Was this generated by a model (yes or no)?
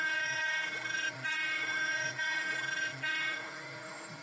yes